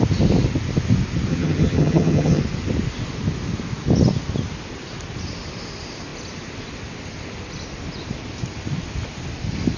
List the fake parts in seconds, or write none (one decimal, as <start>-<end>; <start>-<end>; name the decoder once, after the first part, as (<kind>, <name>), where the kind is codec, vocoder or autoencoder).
1.3-2.4 (vocoder, HiFi-GAN)